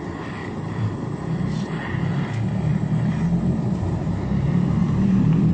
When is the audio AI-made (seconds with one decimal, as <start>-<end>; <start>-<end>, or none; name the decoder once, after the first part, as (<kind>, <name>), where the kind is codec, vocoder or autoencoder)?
0.4-2.0 (vocoder, BigVGAN v2); 2.7-4.1; 4.8-5.5